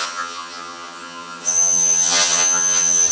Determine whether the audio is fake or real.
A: fake